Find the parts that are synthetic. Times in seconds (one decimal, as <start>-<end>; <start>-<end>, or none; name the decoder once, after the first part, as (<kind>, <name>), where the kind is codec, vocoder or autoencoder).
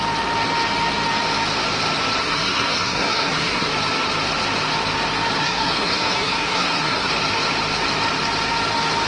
2.2-3.7 (codec, SNAC); 5.4-7.1